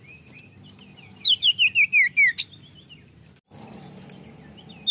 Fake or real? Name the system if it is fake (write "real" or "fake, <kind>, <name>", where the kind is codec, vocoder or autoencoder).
real